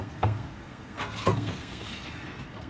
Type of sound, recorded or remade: remade